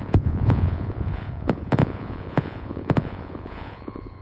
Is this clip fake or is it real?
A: fake